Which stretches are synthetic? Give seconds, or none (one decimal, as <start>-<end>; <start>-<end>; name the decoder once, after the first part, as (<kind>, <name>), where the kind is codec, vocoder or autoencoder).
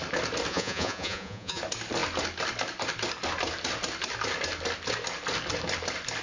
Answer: 0.5-1.6 (vocoder, Vocos)